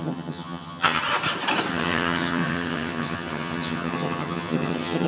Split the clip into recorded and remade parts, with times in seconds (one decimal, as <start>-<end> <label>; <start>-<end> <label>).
0.0-1.0 remade; 1.0-1.7 recorded; 1.7-5.1 remade